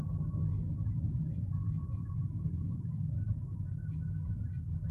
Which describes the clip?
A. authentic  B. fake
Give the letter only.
A